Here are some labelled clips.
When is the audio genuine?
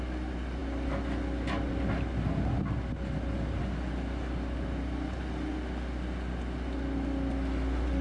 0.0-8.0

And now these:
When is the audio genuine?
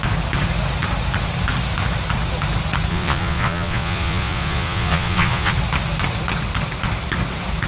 0.0-2.9; 5.5-7.7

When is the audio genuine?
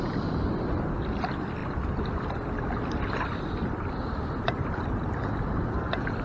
none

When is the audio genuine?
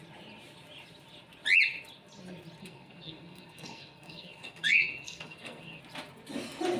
0.0-2.6; 5.8-6.8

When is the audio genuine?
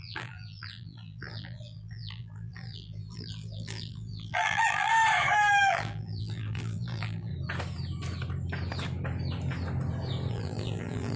4.9-5.6; 7.3-10.3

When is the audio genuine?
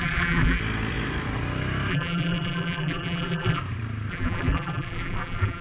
0.6-1.9; 3.6-4.1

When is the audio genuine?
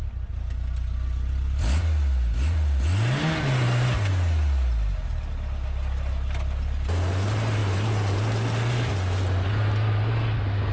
0.0-10.7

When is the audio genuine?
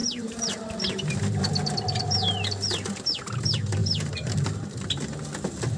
1.4-3.8; 4.8-5.8